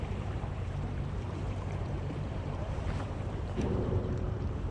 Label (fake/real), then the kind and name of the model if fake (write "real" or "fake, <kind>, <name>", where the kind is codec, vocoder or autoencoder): fake, vocoder, BigVGAN v2